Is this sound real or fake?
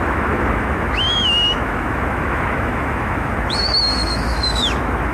fake